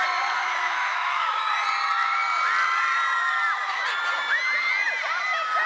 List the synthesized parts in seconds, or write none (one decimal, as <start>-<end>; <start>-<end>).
0.4-1.4